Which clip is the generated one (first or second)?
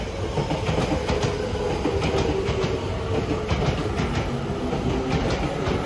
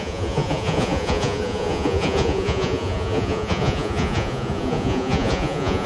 second